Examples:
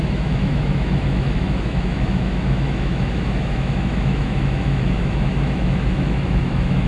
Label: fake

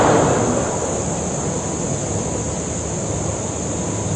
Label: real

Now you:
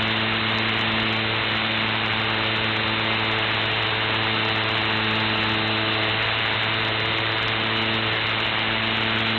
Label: real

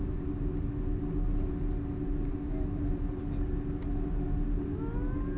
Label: real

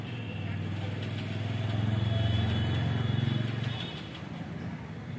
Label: real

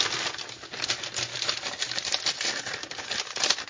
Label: real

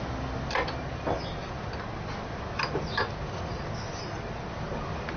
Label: real